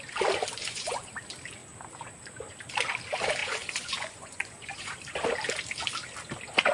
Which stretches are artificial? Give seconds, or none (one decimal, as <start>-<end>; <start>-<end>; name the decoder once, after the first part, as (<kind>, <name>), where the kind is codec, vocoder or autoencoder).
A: 0.6-1.1 (vocoder, Vocos); 3.4-4.9